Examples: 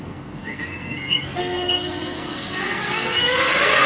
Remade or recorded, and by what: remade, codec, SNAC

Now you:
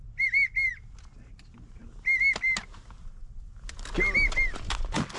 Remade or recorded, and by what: recorded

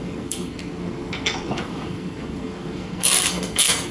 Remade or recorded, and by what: remade, codec, SNAC